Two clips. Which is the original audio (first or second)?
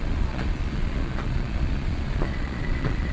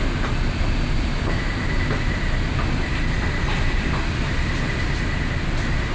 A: second